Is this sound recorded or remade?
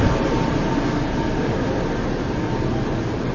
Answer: recorded